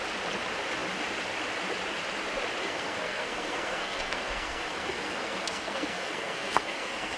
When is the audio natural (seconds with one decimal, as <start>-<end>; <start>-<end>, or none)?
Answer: 0.0-2.6